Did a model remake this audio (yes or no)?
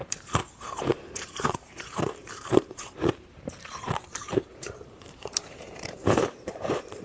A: yes